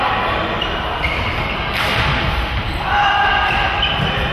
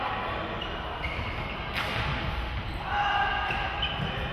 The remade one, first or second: first